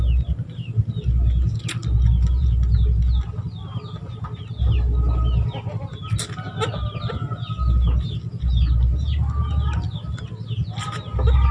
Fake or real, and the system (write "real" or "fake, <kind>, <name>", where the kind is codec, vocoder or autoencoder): real